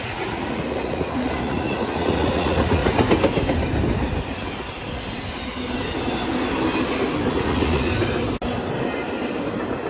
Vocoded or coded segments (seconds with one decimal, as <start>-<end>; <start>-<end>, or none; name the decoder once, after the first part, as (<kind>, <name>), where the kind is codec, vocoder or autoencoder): 0.0-2.8 (vocoder, Vocos); 7.3-7.9